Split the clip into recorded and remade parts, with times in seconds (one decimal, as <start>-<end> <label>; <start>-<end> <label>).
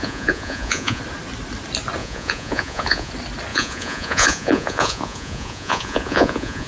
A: 0.0-1.0 remade; 1.0-2.0 recorded; 2.0-3.1 remade; 3.1-3.5 recorded; 3.5-6.7 remade